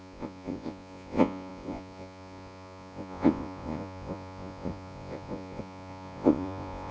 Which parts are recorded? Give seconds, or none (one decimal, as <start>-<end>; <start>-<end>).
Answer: none